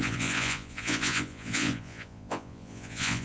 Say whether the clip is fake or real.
fake